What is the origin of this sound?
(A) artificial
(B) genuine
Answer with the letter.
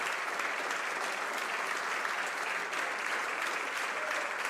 B